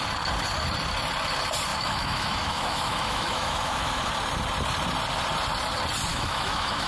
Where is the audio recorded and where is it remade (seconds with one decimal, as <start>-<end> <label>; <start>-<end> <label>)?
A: 0.0-1.7 recorded; 1.7-4.0 remade; 4.0-6.1 recorded; 6.1-6.9 remade